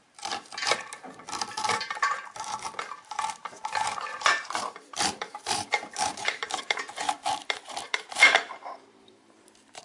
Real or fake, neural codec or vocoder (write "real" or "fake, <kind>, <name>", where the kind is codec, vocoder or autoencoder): fake, vocoder, BigVGAN v2